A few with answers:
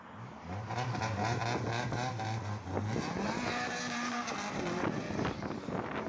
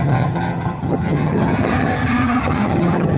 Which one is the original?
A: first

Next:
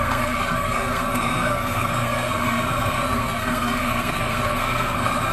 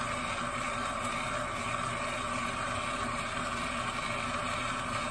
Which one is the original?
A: second